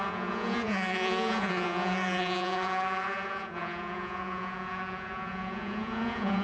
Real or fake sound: fake